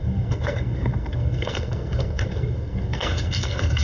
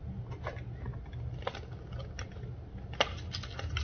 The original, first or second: second